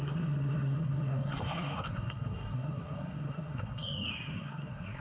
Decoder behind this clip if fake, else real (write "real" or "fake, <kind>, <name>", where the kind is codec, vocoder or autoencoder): fake, codec, SNAC